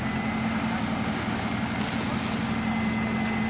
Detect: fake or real real